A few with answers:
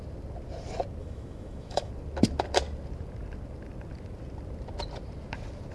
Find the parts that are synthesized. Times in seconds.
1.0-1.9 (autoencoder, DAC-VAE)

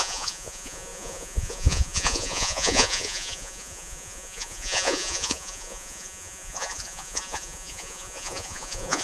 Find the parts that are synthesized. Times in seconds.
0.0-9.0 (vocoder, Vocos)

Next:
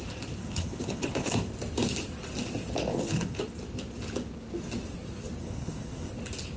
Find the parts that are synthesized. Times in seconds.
0.4-1.3 (codec, HILCodec); 2.9-3.4; 5.4-6.1

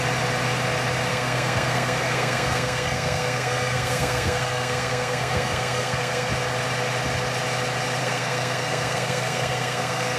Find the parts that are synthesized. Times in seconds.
1.1-6.3 (codec, SNAC); 8.0-10.2

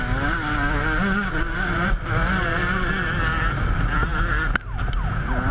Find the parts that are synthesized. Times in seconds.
none